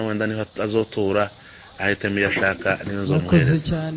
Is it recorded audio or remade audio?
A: recorded